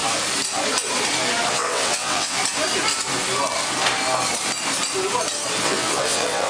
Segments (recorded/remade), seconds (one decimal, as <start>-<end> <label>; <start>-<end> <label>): 0.0-1.5 recorded; 1.5-2.4 remade; 2.4-5.6 recorded; 5.6-6.5 remade